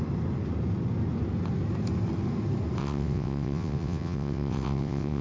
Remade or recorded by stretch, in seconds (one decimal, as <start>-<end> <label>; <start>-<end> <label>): 0.0-2.8 recorded; 2.8-5.2 remade